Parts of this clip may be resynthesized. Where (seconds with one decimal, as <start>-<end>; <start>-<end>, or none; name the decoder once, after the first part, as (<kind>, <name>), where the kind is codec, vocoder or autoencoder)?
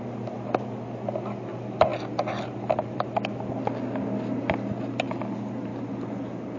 none